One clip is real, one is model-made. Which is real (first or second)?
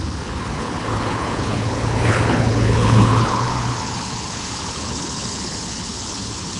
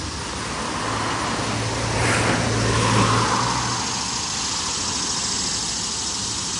second